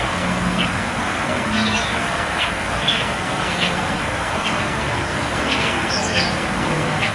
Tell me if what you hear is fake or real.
fake